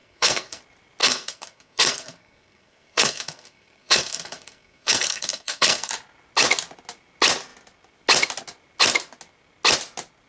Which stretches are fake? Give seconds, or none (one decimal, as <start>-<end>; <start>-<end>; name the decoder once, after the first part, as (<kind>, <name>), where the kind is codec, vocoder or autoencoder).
0.0-0.6 (codec, SNAC); 1.0-5.9